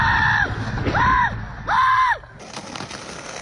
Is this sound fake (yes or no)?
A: no